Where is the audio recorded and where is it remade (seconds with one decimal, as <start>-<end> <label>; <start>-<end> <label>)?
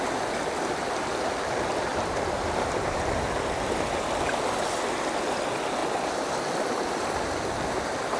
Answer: 0.0-1.9 recorded; 1.9-3.1 remade; 3.1-8.2 recorded